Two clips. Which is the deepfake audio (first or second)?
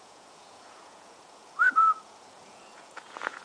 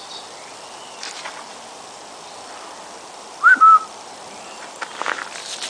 first